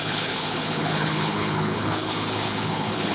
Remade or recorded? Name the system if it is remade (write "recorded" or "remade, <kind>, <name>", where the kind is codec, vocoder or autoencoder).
remade, codec, HILCodec